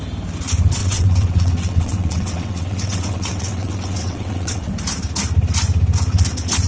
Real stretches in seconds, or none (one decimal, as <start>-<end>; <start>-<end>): 0.0-0.8; 4.7-6.7